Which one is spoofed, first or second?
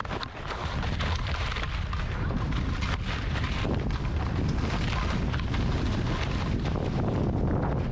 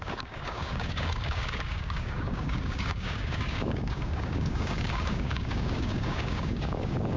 second